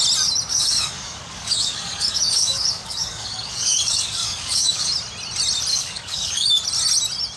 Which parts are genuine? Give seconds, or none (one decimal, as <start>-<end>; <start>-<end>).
0.0-0.5; 4.9-5.7; 6.6-7.4